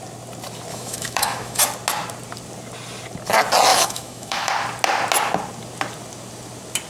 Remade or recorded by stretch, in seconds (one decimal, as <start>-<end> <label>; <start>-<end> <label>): 0.0-0.7 recorded; 0.7-1.6 remade; 1.6-3.7 recorded; 3.7-4.5 remade; 4.5-6.9 recorded